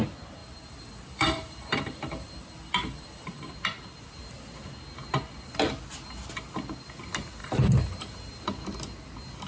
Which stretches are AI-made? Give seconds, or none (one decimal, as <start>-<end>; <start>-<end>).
0.4-3.5; 7.4-8.1